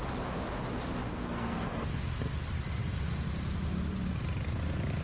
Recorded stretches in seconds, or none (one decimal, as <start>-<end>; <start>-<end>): 0.0-1.1; 1.9-5.0